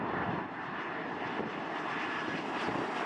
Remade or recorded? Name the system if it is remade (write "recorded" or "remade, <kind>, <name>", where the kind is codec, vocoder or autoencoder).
recorded